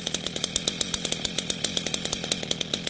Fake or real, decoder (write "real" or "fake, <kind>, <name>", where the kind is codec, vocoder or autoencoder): real